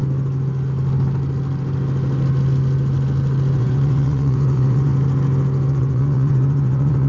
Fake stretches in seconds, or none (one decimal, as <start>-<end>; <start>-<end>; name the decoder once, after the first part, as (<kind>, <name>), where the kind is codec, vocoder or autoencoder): 3.6-4.9 (vocoder, Vocos); 5.7-7.1